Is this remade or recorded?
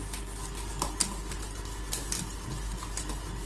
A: recorded